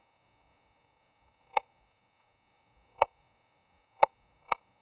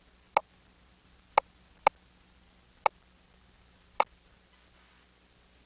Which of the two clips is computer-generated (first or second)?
first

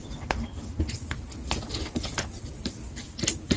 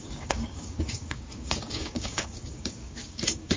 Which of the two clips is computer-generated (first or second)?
second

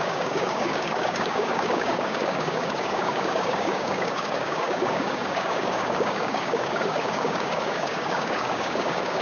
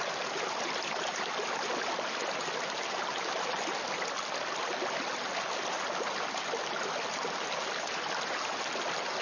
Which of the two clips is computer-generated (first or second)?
first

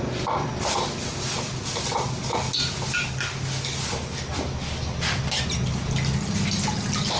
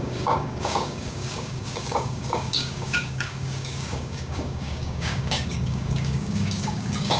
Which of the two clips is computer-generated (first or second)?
second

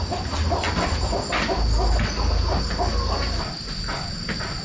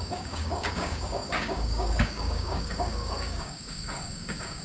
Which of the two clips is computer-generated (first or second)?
second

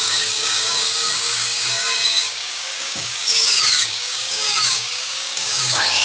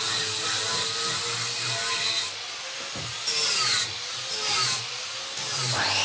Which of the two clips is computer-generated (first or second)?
first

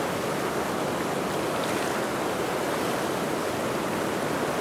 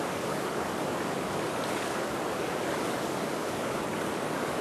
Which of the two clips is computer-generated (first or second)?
second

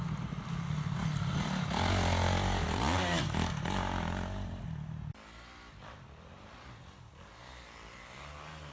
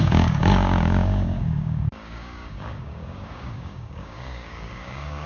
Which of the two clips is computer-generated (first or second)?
second